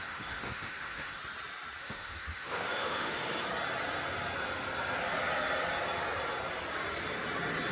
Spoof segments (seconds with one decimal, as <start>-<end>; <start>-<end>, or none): 0.0-1.2; 1.8-3.2